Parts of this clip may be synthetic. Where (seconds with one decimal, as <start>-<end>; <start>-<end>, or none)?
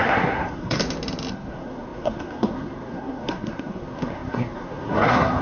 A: 0.0-0.8; 1.3-5.4